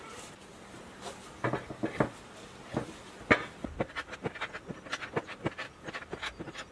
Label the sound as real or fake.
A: real